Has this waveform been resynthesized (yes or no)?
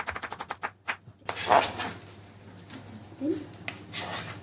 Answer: no